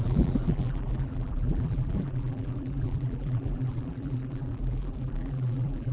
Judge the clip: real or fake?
fake